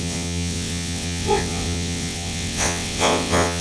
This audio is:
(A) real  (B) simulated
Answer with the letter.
B